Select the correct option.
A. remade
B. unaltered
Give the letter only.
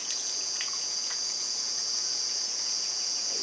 A